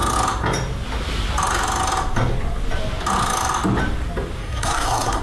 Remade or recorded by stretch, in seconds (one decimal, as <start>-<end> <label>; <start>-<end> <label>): 0.0-4.4 recorded; 4.4-5.2 remade